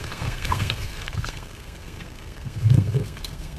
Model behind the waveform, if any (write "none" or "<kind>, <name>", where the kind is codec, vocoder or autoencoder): codec, SNAC